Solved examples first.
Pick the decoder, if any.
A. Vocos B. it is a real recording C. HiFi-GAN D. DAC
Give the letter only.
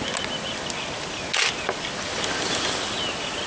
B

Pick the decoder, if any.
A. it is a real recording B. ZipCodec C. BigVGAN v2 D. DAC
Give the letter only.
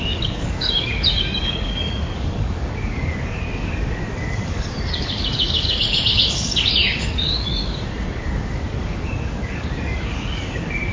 D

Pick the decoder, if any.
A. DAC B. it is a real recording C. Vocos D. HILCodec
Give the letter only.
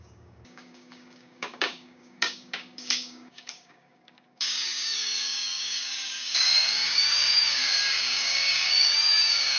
A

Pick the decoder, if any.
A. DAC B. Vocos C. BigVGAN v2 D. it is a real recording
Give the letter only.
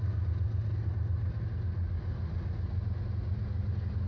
D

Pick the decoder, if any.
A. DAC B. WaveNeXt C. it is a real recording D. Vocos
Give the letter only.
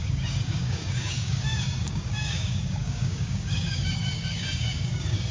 A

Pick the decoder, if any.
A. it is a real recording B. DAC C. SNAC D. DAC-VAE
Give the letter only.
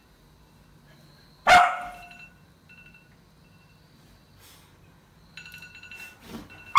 A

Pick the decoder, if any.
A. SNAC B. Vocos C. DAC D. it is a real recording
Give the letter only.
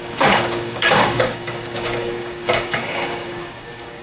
C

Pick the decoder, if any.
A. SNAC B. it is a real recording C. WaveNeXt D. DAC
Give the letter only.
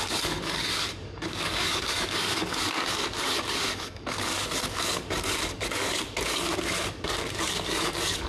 D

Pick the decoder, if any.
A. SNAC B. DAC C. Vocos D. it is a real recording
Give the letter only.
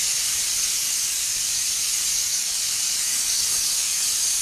B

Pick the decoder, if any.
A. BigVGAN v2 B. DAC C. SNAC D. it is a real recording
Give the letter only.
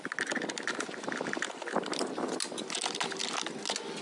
D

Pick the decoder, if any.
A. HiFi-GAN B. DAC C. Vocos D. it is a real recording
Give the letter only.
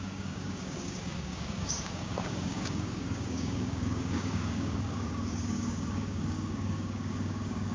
B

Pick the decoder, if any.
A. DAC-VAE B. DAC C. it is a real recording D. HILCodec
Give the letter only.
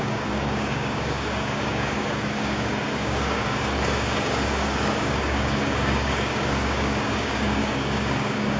B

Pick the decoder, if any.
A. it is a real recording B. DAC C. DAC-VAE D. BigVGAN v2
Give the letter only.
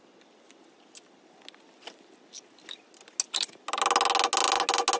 A